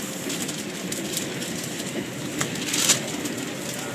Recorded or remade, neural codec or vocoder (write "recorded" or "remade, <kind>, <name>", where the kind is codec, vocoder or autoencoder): recorded